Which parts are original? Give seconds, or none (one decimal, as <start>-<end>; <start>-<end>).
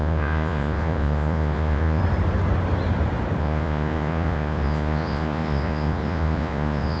2.0-3.4